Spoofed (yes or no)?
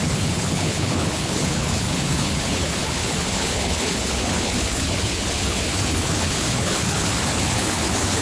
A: yes